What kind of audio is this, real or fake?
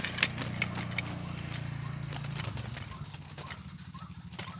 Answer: real